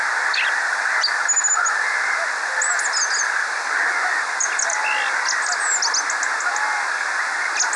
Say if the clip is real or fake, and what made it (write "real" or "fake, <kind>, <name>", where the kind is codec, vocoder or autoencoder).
real